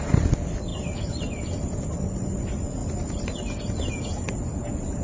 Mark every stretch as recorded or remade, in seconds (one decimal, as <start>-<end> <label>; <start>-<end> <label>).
0.0-0.7 recorded; 0.7-2.4 remade; 2.4-2.8 recorded; 2.8-3.9 remade; 3.9-5.0 recorded